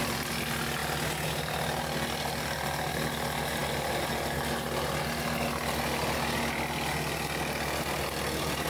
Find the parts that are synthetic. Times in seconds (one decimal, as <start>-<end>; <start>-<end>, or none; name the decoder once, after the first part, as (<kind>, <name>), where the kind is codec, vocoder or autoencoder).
none